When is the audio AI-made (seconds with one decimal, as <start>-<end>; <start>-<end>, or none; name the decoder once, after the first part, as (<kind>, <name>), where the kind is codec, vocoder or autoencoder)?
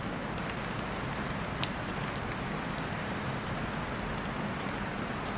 3.0-3.5 (autoencoder, DAC-VAE)